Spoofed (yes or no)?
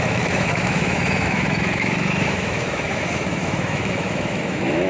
yes